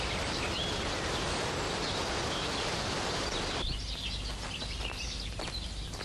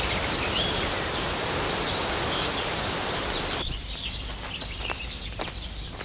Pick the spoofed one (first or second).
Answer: second